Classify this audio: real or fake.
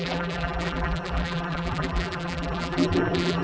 fake